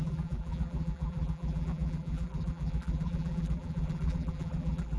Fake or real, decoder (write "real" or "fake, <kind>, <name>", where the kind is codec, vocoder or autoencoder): fake, vocoder, BigVGAN v2